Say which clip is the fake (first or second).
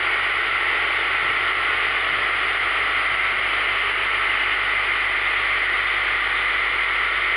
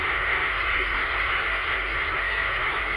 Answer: second